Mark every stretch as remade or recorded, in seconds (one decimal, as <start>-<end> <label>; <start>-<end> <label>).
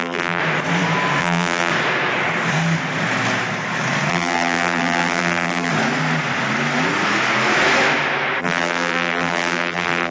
0.0-0.4 remade; 0.4-1.2 recorded; 1.2-1.7 remade; 1.7-4.1 recorded; 4.1-5.7 remade; 5.7-8.4 recorded; 8.4-10.1 remade